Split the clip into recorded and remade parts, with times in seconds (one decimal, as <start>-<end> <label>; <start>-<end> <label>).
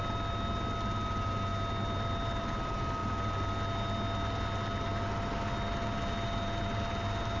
0.0-7.4 recorded